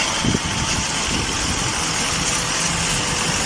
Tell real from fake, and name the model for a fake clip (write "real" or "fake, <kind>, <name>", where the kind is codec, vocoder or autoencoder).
real